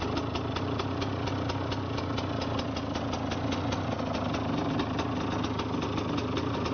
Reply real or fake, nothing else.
real